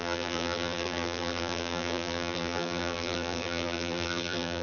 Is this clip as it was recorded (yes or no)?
no